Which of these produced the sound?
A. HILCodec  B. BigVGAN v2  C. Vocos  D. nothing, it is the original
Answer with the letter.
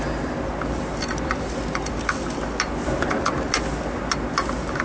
D